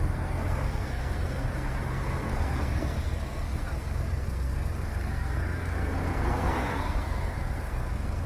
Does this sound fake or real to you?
fake